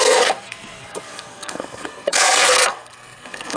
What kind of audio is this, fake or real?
fake